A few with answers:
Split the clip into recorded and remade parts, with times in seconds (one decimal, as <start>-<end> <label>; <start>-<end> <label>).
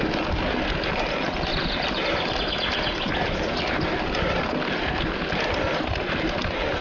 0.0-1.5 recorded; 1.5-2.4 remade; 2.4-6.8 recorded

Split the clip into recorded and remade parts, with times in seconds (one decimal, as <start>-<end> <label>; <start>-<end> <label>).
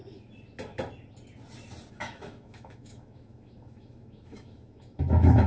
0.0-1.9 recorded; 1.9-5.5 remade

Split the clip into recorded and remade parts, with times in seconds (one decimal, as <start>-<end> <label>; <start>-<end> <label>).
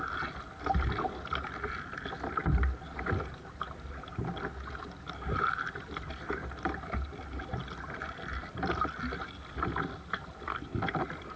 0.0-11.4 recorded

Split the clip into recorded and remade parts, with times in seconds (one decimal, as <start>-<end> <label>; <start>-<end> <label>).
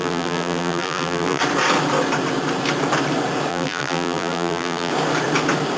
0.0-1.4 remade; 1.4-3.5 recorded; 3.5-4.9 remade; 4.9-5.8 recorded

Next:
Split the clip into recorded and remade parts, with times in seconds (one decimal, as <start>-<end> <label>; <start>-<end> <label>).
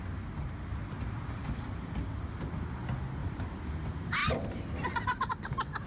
0.0-0.7 recorded; 0.7-1.7 remade; 1.7-3.2 recorded; 3.2-3.8 remade; 3.8-4.2 recorded; 4.2-5.3 remade; 5.3-5.9 recorded